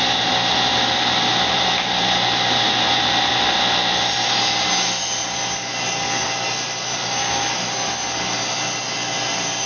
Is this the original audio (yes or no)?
yes